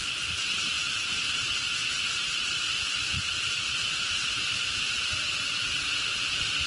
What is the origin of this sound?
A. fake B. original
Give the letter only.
A